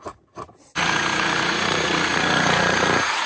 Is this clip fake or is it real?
fake